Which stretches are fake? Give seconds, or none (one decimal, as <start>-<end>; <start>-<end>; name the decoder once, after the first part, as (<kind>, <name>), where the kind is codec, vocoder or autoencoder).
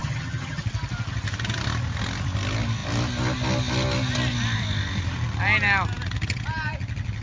0.0-0.6 (vocoder, HiFi-GAN)